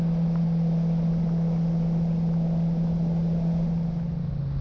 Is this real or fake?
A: real